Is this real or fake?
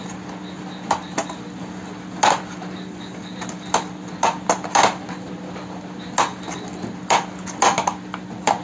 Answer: real